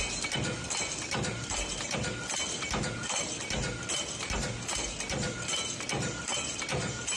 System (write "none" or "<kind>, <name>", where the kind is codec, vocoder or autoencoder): none